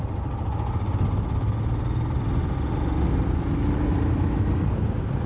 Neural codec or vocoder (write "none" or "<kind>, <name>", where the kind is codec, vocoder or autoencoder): none